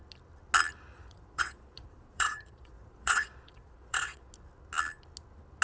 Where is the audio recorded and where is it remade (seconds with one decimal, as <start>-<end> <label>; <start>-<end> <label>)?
0.0-0.9 recorded; 0.9-4.3 remade; 4.3-5.6 recorded